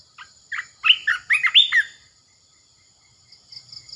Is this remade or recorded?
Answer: recorded